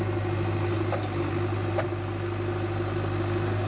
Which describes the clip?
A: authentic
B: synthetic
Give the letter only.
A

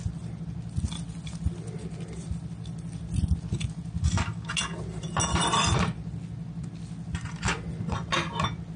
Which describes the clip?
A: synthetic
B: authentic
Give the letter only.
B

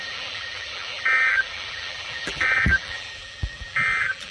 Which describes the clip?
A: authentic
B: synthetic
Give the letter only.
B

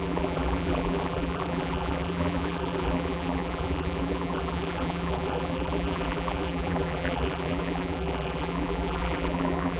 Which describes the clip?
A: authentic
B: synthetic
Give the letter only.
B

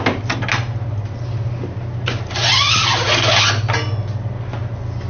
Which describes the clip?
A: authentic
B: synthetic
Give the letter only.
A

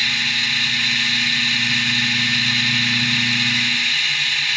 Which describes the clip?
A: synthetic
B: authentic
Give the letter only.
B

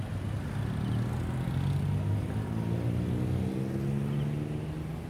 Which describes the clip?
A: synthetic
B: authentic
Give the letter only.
B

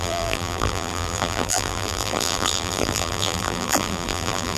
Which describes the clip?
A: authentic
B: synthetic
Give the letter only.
B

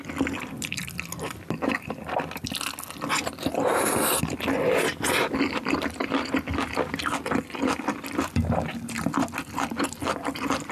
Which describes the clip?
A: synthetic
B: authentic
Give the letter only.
B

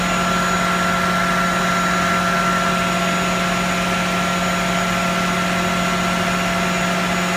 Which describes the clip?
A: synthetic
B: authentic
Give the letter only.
B